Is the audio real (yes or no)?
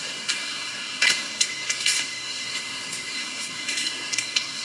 no